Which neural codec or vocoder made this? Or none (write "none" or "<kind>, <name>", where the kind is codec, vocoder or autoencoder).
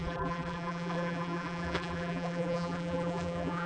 vocoder, BigVGAN v2